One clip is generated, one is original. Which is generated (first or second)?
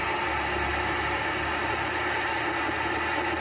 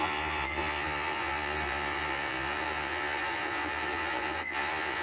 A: second